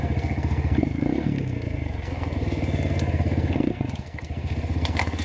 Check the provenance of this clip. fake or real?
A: fake